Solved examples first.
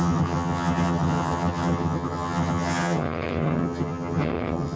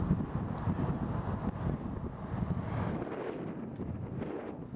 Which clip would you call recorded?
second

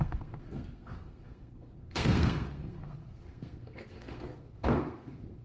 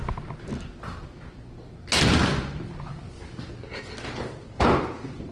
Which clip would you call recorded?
second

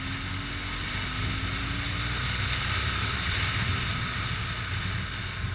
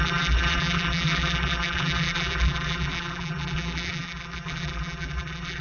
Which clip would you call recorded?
first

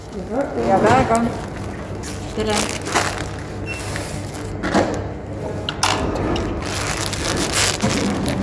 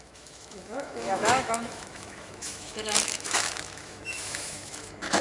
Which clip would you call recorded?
first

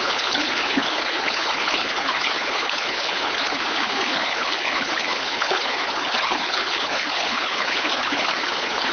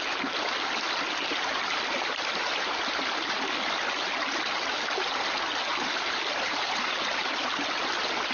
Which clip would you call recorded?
second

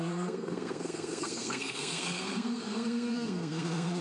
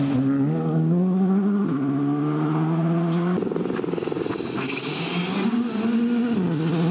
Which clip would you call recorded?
second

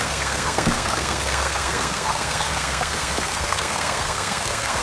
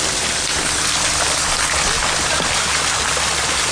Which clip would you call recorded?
second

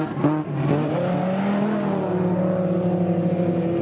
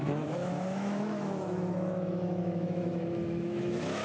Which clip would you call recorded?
first